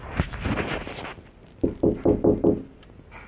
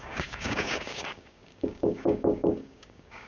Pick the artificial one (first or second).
second